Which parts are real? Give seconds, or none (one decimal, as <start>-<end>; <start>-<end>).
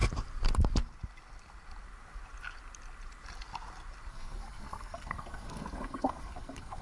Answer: 0.0-4.1